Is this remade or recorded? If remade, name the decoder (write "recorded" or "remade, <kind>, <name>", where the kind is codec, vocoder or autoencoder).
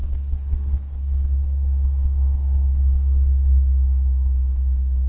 remade, codec, SNAC